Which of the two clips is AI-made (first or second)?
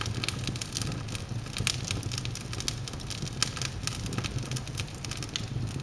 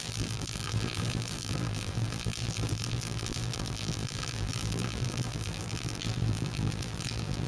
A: second